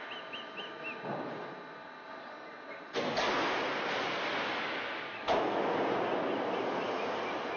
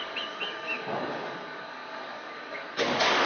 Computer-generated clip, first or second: second